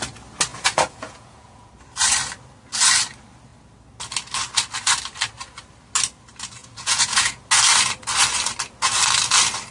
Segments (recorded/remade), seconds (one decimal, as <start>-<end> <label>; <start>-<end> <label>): 0.0-0.5 recorded; 0.5-1.7 remade; 1.7-6.6 recorded; 6.6-7.4 remade; 7.4-9.7 recorded

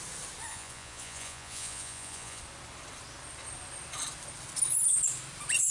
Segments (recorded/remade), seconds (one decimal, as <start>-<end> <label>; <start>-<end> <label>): 0.0-0.5 recorded; 0.5-2.4 remade; 2.4-5.7 recorded

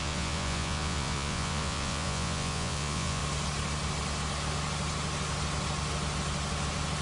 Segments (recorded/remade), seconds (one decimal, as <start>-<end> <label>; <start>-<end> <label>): 0.0-3.2 remade; 3.2-7.0 recorded